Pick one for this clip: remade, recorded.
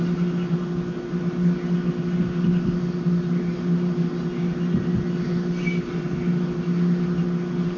recorded